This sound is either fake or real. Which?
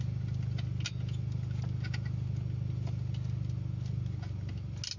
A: real